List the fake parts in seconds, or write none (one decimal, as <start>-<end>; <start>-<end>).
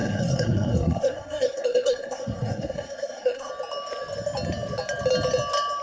0.0-3.5